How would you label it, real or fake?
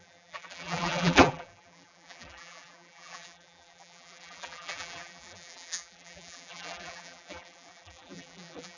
fake